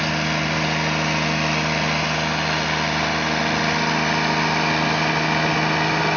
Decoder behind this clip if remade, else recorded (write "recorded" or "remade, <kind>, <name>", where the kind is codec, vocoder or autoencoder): recorded